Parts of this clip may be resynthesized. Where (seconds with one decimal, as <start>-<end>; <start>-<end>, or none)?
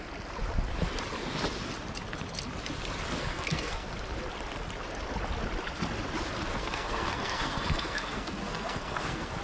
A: 3.1-3.9; 6.5-9.4